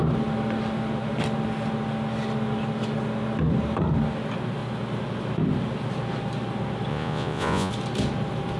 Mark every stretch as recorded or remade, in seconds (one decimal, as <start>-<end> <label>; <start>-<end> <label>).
0.0-6.9 recorded; 6.9-7.7 remade; 7.7-8.6 recorded